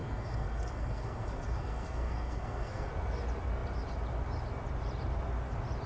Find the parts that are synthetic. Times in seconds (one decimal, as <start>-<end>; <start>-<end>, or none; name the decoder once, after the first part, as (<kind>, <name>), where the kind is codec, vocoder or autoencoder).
0.0-2.9 (codec, SNAC)